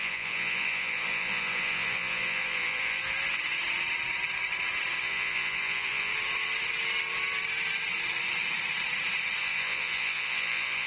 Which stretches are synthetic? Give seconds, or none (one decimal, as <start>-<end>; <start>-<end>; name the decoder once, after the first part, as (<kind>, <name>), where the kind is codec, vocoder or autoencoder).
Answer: 0.0-3.0 (vocoder, Vocos); 5.0-6.1; 9.4-10.9